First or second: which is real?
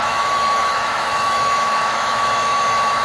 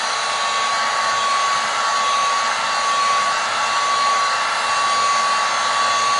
second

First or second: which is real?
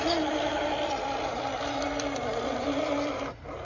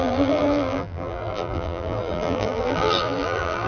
first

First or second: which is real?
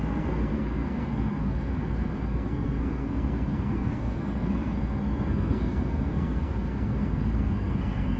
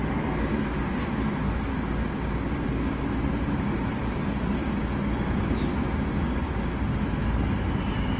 second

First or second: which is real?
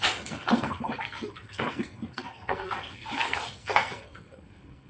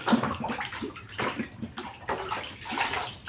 second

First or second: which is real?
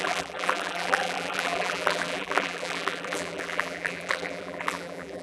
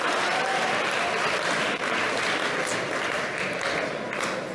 second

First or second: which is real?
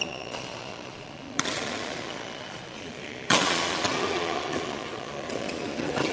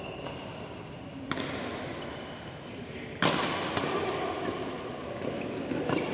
second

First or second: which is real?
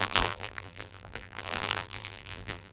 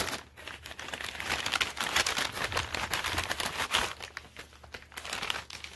second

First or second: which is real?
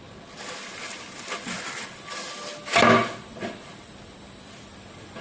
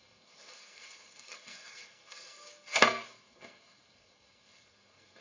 first